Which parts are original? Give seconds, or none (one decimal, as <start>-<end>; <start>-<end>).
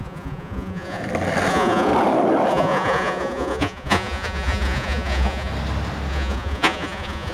1.0-1.5; 1.9-2.5; 5.5-6.1